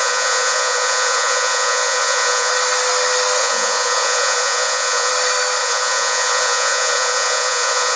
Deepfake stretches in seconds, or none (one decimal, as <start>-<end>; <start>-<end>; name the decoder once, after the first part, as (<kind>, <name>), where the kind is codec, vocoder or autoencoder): 0.0-2.5 (vocoder, Vocos); 3.4-5.1; 5.6-8.0